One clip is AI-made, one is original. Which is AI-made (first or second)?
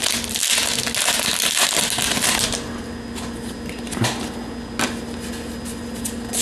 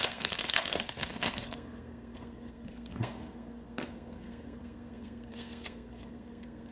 second